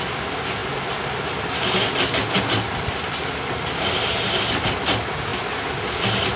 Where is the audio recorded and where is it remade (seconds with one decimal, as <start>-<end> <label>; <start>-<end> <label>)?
0.0-6.4 recorded